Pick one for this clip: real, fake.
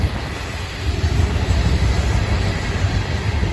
fake